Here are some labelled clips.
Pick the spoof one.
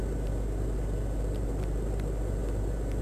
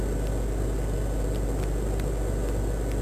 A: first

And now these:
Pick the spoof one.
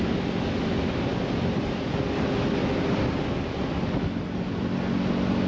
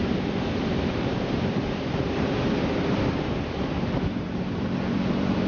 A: second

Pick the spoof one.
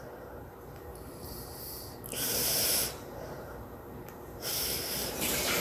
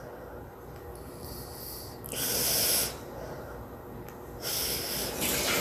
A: first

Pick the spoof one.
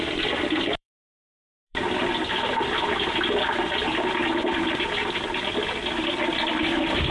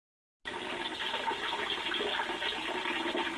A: first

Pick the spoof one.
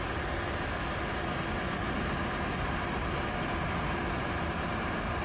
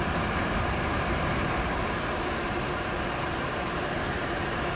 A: second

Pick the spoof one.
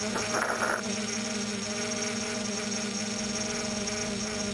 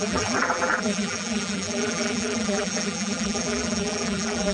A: second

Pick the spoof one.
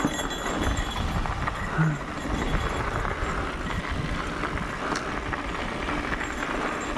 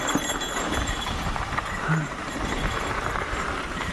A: second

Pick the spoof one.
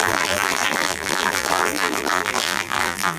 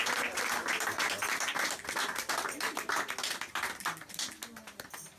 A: first